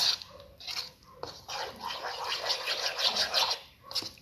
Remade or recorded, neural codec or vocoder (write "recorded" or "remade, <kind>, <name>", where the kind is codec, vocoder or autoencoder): recorded